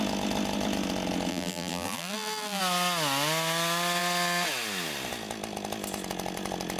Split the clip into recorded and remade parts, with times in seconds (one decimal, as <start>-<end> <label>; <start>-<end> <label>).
0.0-1.3 recorded; 1.3-2.6 remade; 2.6-6.8 recorded